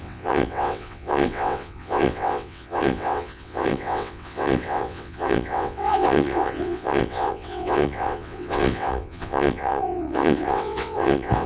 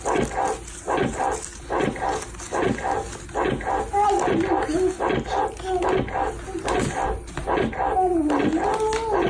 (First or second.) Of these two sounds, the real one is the second